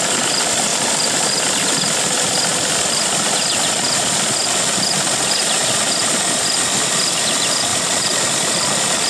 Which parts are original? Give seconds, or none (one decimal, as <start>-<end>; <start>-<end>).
0.0-0.7; 1.7-2.5; 3.4-7.7; 8.7-9.1